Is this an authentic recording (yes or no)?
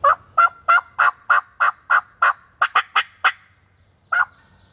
yes